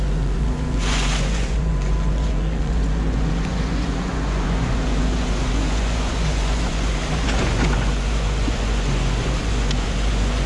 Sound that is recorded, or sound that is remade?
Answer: remade